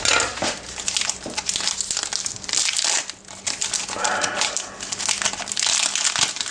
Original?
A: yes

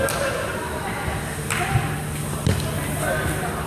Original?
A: yes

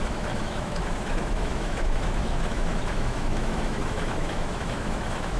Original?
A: no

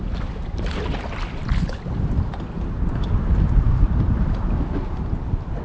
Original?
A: yes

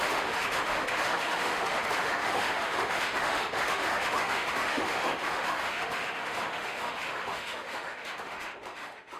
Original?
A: no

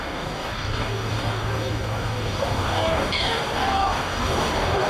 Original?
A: no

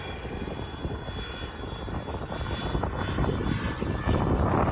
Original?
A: yes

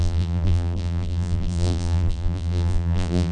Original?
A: no